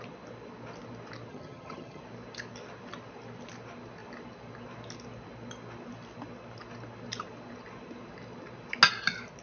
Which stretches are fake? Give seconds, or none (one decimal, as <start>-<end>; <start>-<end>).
1.3-2.0